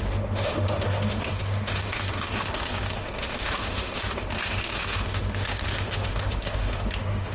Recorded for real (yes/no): no